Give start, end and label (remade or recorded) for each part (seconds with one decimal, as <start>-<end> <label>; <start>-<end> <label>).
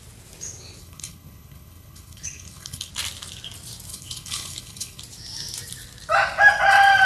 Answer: 0.0-0.8 recorded; 0.8-2.9 remade; 2.9-3.9 recorded; 3.9-5.0 remade; 5.0-7.0 recorded